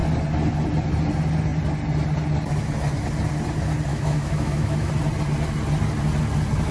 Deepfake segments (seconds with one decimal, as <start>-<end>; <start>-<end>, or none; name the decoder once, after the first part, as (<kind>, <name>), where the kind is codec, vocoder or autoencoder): 3.9-4.9 (autoencoder, DAC-VAE)

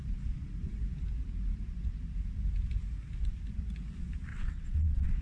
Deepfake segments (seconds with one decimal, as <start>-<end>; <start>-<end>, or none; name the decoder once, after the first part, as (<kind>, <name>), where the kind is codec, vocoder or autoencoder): 4.3-5.2 (vocoder, WaveNeXt)

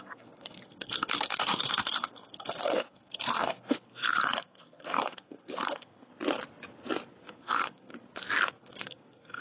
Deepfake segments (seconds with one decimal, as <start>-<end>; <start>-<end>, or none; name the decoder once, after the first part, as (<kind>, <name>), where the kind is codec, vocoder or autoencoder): 0.0-6.1 (codec, SNAC); 7.2-7.9; 8.5-9.4

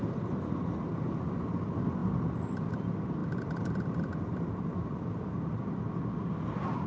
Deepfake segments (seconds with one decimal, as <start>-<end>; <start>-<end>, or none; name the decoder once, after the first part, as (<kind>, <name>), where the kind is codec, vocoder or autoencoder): 3.2-5.8 (vocoder, BigVGAN v2)

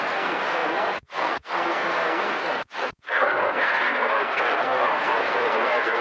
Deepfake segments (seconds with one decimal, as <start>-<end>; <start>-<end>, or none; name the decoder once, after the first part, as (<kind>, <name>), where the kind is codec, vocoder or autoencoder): 0.0-6.0 (codec, SNAC)